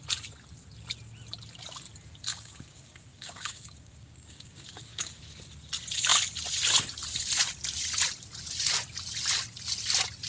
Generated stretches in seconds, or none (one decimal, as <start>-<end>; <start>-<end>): 2.3-5.1